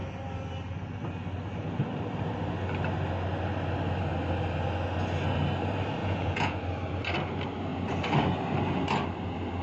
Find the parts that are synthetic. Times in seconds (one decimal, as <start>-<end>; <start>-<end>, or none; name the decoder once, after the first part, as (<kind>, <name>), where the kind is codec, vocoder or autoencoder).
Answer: 6.0-6.6 (vocoder, Vocos)